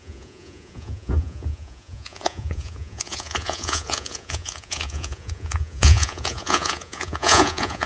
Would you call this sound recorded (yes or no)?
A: no